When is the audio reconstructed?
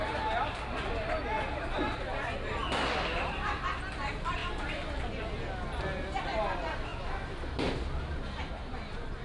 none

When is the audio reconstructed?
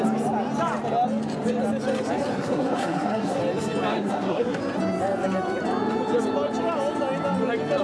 2.3-3.4 (codec, SNAC); 3.9-4.6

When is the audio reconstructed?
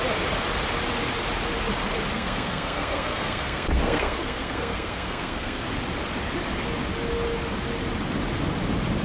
2.1-5.6 (codec, SNAC)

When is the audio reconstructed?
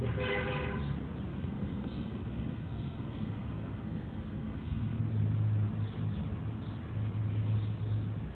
1.3-5.0 (codec, SNAC)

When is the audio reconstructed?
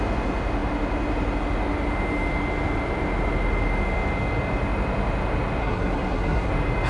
5.6-6.5 (codec, SNAC)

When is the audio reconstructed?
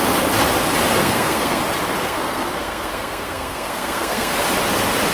1.0-1.6 (codec, SNAC); 2.0-4.3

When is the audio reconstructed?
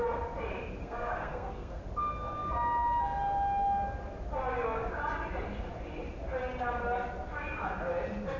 0.8-1.8 (codec, SNAC)